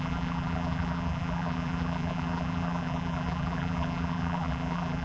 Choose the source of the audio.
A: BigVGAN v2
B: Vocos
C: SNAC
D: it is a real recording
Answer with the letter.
A